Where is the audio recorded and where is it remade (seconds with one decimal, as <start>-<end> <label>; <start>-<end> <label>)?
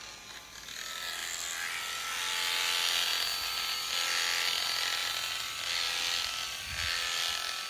0.0-7.7 recorded